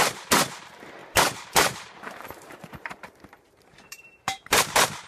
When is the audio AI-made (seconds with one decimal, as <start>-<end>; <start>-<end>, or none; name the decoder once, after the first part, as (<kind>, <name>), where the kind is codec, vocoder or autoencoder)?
0.0-5.1 (vocoder, BigVGAN v2)